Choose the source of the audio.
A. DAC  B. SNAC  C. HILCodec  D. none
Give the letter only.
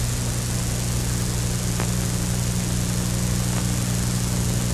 D